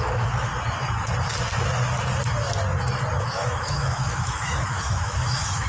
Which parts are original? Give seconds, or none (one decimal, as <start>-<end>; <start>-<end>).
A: 0.5-3.2